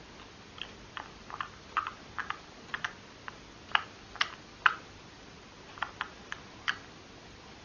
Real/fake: real